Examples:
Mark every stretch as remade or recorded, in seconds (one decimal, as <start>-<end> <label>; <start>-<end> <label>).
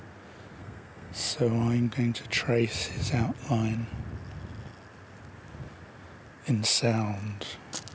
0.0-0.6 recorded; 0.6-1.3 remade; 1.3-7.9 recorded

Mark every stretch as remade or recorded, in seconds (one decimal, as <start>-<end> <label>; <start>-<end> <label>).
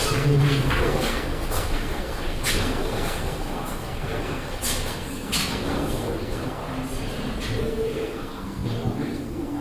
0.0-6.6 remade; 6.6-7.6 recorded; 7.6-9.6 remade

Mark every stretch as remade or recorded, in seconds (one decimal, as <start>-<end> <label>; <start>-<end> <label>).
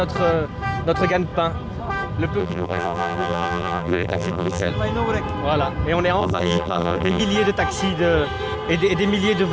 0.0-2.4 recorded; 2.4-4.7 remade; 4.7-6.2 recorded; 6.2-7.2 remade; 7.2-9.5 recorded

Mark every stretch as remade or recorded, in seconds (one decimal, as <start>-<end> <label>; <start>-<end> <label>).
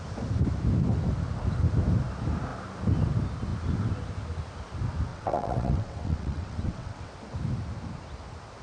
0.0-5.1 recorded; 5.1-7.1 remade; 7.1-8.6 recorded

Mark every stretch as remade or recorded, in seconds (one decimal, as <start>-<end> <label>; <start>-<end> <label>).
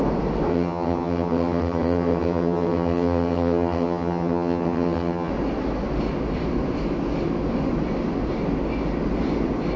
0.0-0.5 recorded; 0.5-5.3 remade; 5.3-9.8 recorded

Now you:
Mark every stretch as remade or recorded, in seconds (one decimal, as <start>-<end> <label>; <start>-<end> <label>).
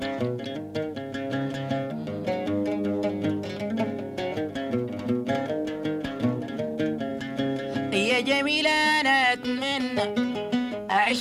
0.0-10.3 recorded; 10.3-11.2 remade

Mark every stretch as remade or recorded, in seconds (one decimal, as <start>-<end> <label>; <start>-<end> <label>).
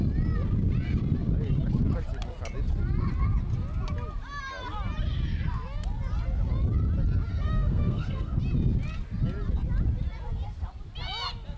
0.0-7.3 recorded; 7.3-8.4 remade; 8.4-11.6 recorded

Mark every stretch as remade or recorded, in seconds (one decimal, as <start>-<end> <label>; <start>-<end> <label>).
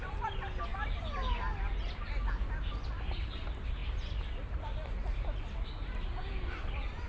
0.0-7.1 recorded